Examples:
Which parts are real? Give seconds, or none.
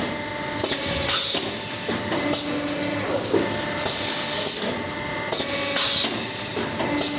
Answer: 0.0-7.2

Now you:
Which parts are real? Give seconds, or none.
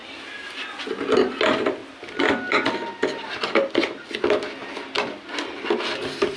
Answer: 0.0-6.4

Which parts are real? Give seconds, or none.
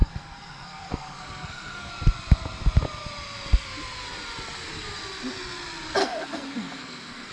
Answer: 1.9-6.0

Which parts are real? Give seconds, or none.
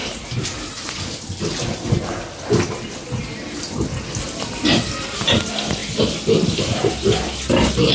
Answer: 0.0-7.9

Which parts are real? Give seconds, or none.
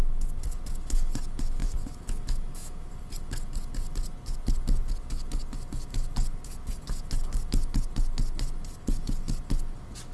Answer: 0.0-1.6; 2.9-10.1